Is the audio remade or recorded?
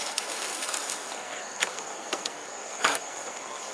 remade